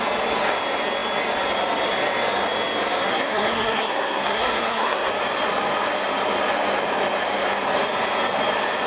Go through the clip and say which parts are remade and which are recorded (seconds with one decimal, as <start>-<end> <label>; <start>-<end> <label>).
0.0-3.1 recorded; 3.1-5.1 remade; 5.1-8.9 recorded

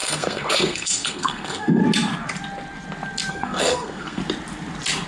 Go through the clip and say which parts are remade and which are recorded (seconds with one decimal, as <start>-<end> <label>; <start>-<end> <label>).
0.0-1.8 remade; 1.8-3.3 recorded; 3.3-4.2 remade; 4.2-5.1 recorded

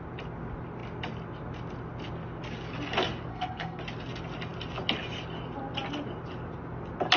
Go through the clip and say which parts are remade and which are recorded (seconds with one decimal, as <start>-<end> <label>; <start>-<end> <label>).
0.0-3.3 recorded; 3.3-3.8 remade; 3.8-7.2 recorded

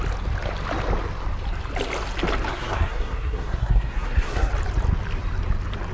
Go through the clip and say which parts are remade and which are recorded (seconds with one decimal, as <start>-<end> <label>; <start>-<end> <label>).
0.0-2.5 recorded; 2.5-4.5 remade; 4.5-5.9 recorded

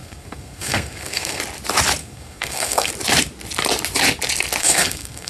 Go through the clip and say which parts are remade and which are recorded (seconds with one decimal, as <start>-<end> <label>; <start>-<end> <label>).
0.0-1.4 remade; 1.4-2.0 recorded; 2.0-2.9 remade; 2.9-4.6 recorded; 4.6-5.3 remade

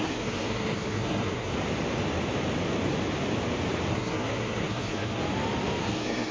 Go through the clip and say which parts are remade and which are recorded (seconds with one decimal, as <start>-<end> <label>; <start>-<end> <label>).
0.0-1.5 remade; 1.5-3.9 recorded; 3.9-5.2 remade; 5.2-5.8 recorded; 5.8-6.3 remade

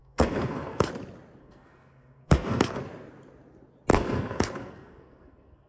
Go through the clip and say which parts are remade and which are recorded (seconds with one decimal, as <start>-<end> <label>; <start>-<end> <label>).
0.0-0.9 remade; 0.9-1.4 recorded; 1.4-2.8 remade; 2.8-3.9 recorded; 3.9-5.7 remade